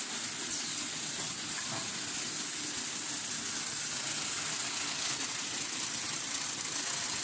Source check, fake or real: real